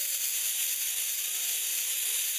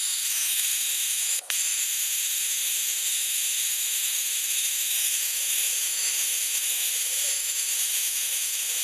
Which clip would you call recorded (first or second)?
first